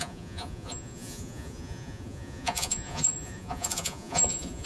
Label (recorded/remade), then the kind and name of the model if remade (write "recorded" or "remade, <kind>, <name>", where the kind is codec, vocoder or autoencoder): remade, vocoder, Vocos